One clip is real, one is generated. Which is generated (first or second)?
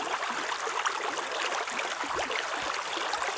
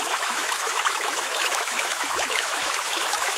second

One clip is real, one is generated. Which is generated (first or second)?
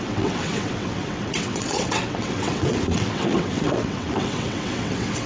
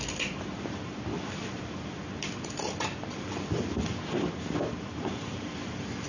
first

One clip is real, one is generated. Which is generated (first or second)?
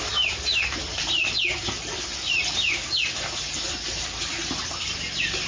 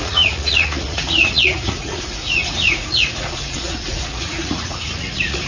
second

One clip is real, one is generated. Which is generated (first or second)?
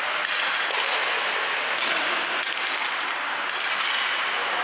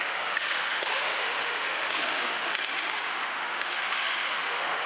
second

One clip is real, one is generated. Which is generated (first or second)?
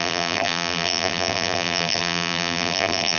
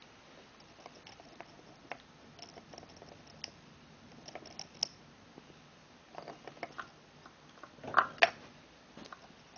first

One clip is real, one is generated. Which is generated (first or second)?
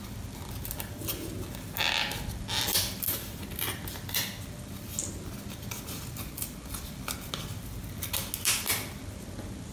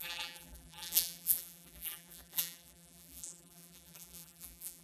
second